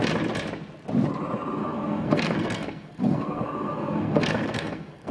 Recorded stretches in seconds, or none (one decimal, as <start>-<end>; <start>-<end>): 0.0-1.6